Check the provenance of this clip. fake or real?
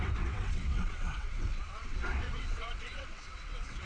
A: fake